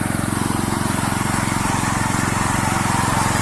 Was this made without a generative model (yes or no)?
yes